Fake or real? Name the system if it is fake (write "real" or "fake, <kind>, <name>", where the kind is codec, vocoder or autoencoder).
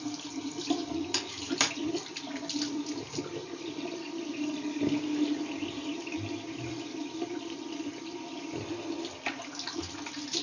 real